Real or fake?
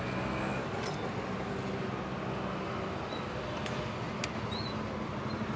real